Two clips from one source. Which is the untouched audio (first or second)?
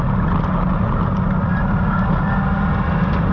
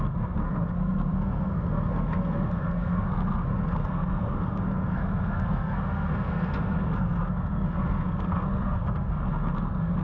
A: first